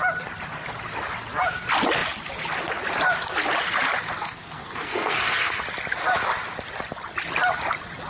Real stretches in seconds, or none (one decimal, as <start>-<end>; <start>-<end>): 0.0-4.2; 5.6-8.1

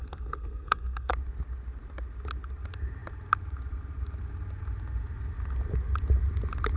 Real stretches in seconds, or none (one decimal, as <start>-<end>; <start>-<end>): 1.1-6.8

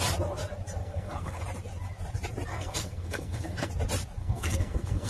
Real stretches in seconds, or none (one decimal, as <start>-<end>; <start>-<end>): 0.0-0.8; 1.4-2.5; 3.7-4.2